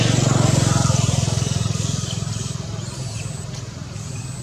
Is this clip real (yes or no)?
yes